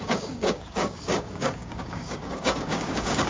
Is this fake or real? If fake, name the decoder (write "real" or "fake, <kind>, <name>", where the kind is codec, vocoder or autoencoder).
fake, codec, DAC